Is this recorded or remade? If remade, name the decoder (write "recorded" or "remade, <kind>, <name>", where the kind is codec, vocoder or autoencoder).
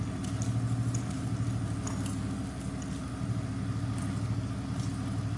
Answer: recorded